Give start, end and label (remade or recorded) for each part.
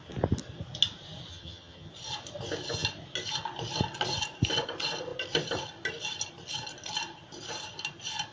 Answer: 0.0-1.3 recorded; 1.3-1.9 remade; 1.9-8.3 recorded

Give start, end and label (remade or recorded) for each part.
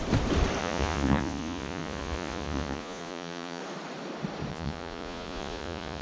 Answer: 0.0-0.6 recorded; 0.6-3.6 remade; 3.6-4.5 recorded; 4.5-6.0 remade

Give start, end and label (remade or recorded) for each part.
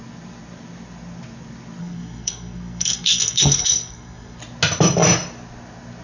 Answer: 0.0-1.8 recorded; 1.8-4.4 remade; 4.4-6.0 recorded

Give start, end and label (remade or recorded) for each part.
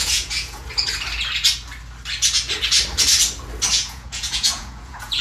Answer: 0.0-0.6 remade; 0.6-3.7 recorded; 3.7-5.2 remade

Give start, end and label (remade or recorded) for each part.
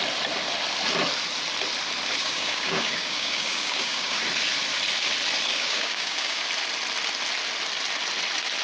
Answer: 0.0-2.2 recorded; 2.2-4.2 remade; 4.2-5.5 recorded; 5.5-6.4 remade; 6.4-8.6 recorded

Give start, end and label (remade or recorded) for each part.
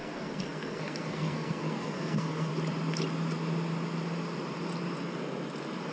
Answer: 0.0-2.5 remade; 2.5-5.9 recorded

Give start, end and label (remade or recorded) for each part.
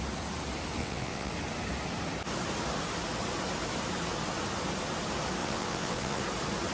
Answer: 0.0-0.8 recorded; 0.8-1.3 remade; 1.3-5.4 recorded; 5.4-6.2 remade; 6.2-6.7 recorded